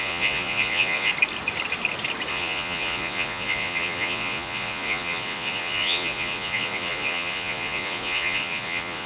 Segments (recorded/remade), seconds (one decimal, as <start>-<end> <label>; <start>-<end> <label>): 0.0-1.1 remade; 1.1-2.3 recorded; 2.3-9.1 remade